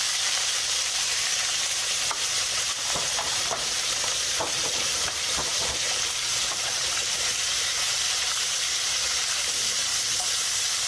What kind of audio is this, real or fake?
fake